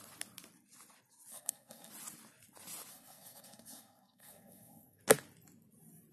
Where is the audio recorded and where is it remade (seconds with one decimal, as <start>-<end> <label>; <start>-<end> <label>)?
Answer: 0.0-1.3 recorded; 1.3-1.9 remade; 1.9-2.9 recorded; 2.9-5.0 remade; 5.0-6.1 recorded